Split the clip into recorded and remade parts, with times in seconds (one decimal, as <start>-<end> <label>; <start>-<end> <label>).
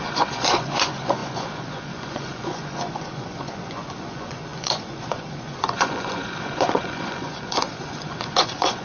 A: 0.0-8.8 remade